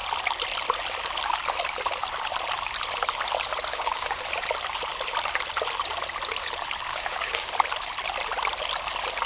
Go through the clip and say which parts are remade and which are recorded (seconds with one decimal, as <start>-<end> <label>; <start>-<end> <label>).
0.0-3.7 recorded; 3.7-4.2 remade; 4.2-6.9 recorded; 6.9-7.5 remade; 7.5-9.3 recorded